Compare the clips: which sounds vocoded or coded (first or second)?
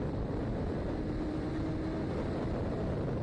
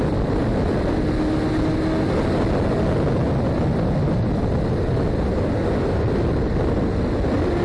first